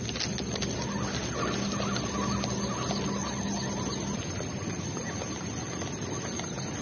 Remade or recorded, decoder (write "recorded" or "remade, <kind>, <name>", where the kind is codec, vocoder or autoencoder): recorded